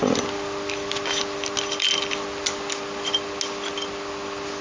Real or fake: real